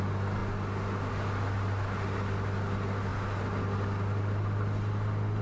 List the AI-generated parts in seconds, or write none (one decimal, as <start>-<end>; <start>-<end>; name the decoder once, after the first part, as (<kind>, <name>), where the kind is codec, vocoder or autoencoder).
none